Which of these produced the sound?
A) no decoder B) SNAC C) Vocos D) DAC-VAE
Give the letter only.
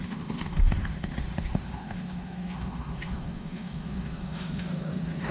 D